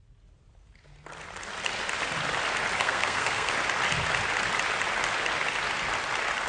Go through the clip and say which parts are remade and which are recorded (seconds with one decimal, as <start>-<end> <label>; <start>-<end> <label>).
0.0-2.8 recorded; 2.8-3.5 remade; 3.5-6.5 recorded

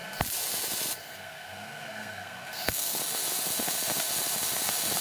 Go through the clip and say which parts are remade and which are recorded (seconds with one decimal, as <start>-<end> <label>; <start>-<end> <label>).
0.0-1.0 recorded; 1.0-3.0 remade; 3.0-5.0 recorded

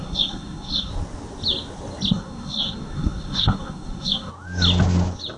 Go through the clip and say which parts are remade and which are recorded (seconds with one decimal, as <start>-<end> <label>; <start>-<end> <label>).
0.0-0.9 remade; 0.9-2.1 recorded; 2.1-4.3 remade; 4.3-5.4 recorded

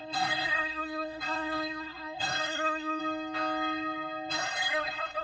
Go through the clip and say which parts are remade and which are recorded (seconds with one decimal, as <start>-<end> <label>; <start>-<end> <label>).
0.0-3.0 remade; 3.0-4.3 recorded; 4.3-5.2 remade

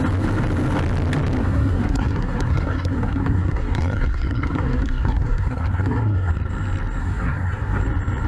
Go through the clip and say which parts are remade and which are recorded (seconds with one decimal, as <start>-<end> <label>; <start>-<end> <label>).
0.0-1.4 recorded; 1.4-6.3 remade; 6.3-7.0 recorded; 7.0-7.8 remade; 7.8-8.3 recorded

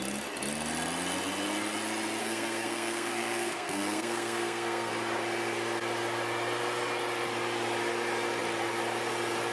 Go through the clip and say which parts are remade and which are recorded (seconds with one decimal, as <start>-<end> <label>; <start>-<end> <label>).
0.0-2.2 recorded; 2.2-4.9 remade; 4.9-9.5 recorded

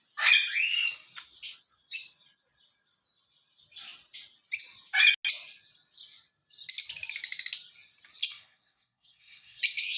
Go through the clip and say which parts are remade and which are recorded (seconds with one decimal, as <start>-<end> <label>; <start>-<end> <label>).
0.0-8.2 recorded; 8.2-9.6 remade; 9.6-10.0 recorded